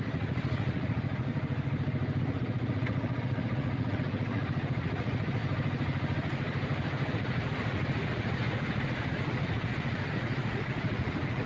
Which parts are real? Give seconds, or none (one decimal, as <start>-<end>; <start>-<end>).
1.3-2.2; 5.4-7.1